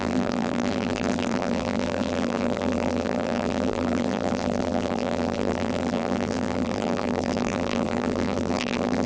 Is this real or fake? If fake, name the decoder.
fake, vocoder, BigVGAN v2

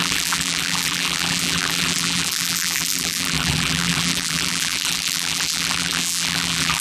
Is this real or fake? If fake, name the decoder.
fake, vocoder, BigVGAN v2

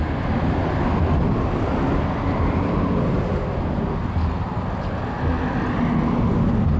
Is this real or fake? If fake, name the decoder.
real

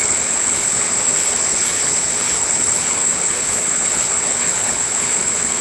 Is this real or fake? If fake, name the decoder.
fake, codec, HILCodec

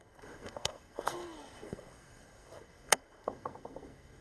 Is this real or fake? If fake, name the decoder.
fake, codec, SNAC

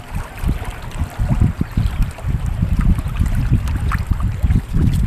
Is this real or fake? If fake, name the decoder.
real